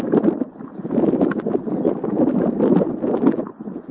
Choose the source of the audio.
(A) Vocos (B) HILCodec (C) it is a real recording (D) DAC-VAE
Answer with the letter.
C